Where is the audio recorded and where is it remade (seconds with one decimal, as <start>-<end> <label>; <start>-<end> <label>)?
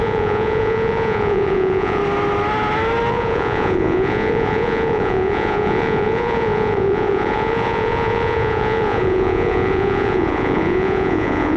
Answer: 0.0-2.0 remade; 2.0-3.1 recorded; 3.1-11.6 remade